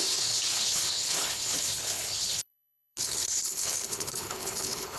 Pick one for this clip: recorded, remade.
remade